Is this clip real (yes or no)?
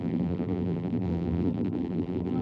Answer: no